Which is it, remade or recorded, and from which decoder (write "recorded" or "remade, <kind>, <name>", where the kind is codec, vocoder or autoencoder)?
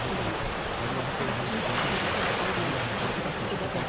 recorded